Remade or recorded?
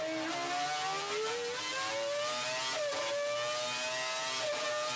recorded